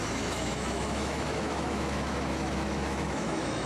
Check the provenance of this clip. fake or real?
fake